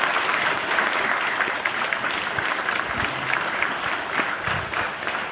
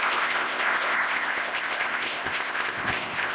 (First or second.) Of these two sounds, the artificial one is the second